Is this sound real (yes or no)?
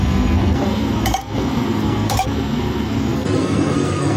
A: no